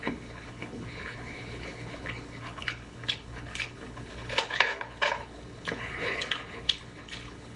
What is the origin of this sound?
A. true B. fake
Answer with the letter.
B